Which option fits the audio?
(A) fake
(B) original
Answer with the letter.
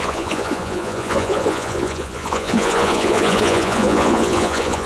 A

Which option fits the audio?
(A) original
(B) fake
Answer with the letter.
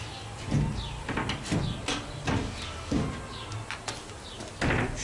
A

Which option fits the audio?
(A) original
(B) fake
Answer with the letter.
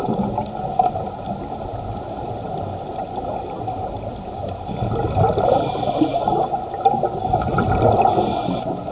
A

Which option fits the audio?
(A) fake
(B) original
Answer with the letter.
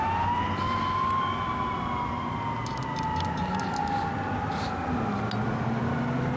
B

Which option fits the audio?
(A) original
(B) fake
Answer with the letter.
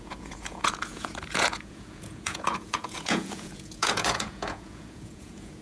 B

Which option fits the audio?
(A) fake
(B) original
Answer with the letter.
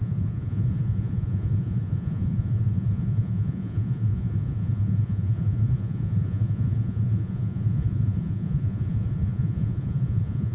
A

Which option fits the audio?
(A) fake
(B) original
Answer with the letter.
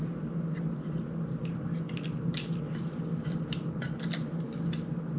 B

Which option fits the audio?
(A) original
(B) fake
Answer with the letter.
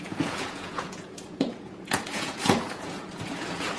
B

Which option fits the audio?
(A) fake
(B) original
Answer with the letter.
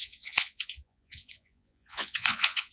A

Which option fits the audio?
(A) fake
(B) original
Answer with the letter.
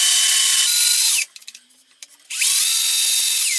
B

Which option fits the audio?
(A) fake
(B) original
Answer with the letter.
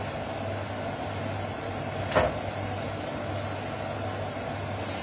B